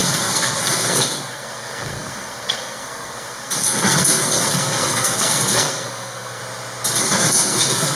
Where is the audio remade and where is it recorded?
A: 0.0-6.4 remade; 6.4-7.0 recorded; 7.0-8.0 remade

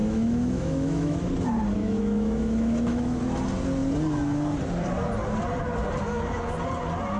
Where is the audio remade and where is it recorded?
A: 0.0-1.3 remade; 1.3-1.8 recorded; 1.8-3.2 remade; 3.2-7.2 recorded

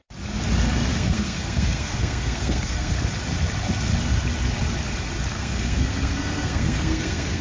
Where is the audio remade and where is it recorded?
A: 0.0-0.9 recorded; 0.9-2.9 remade; 2.9-5.3 recorded; 5.3-7.4 remade

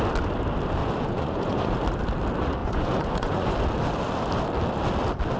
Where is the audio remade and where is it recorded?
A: 0.0-0.8 recorded; 0.8-1.7 remade; 1.7-2.6 recorded; 2.6-3.5 remade; 3.5-5.4 recorded